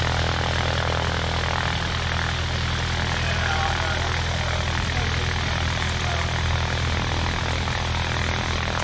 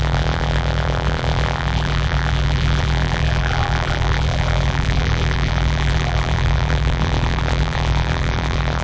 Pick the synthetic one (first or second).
second